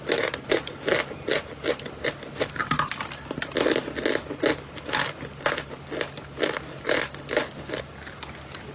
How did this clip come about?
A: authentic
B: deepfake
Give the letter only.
A